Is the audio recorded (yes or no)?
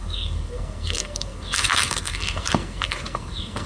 no